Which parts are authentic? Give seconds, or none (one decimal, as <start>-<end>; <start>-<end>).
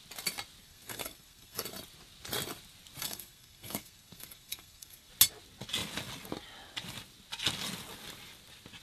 0.0-0.6; 1.7-3.0; 5.1-8.8